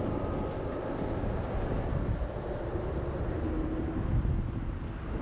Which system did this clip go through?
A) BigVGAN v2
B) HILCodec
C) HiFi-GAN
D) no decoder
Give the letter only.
D